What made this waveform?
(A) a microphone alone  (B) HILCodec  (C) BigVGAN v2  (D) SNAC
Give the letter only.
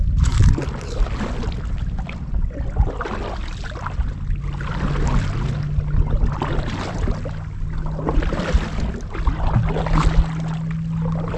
A